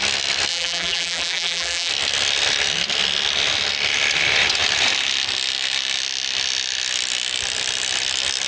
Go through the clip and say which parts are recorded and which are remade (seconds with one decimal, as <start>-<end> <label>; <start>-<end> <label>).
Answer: 0.0-0.5 recorded; 0.5-1.9 remade; 1.9-8.5 recorded